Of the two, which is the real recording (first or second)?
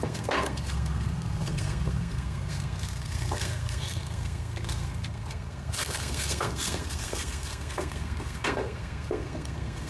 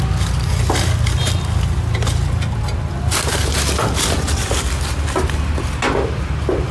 second